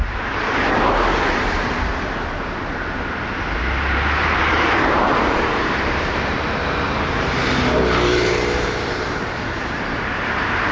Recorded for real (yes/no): no